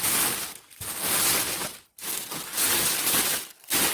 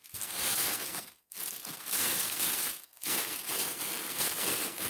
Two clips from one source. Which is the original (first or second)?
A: first